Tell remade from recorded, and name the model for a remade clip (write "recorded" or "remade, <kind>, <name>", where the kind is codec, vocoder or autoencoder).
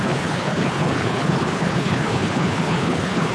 remade, codec, HILCodec